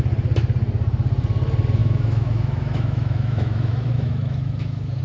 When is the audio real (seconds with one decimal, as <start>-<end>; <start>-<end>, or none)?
0.0-1.8